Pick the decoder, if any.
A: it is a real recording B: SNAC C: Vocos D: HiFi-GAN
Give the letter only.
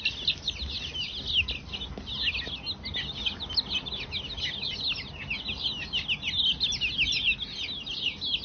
A